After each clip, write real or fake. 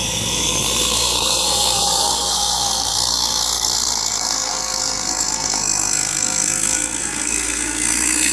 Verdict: fake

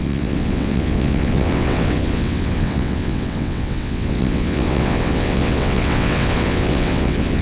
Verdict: fake